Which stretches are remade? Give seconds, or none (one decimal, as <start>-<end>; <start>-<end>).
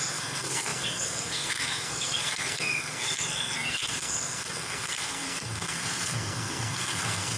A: 0.0-7.4